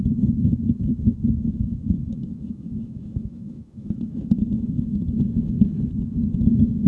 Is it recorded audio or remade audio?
remade